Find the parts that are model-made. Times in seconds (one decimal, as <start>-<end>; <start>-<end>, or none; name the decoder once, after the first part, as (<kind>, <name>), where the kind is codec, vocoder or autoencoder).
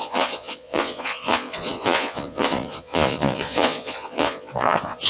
0.0-5.1 (vocoder, Vocos)